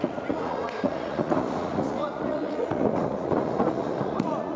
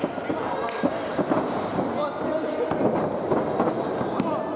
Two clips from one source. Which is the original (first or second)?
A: second